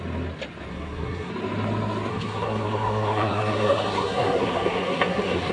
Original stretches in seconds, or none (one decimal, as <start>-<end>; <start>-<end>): 0.0-0.7; 1.3-2.1